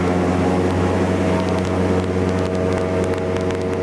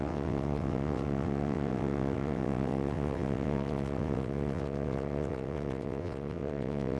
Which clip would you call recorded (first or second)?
first